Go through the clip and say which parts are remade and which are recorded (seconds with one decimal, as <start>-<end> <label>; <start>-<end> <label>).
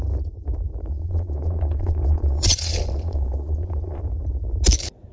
0.0-0.9 recorded; 0.9-4.0 remade; 4.0-5.1 recorded